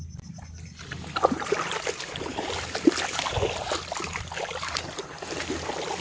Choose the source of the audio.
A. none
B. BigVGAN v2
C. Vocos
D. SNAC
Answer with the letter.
B